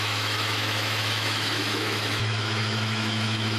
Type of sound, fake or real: fake